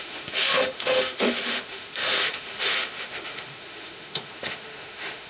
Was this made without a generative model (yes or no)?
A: no